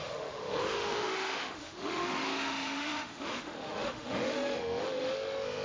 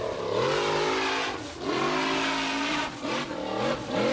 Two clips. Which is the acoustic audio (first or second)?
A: second